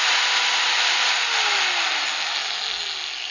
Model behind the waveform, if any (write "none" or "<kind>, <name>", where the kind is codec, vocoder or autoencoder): none